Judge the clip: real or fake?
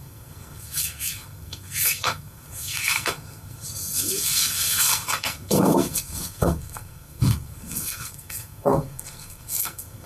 fake